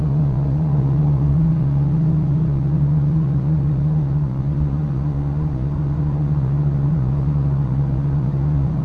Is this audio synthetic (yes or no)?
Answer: yes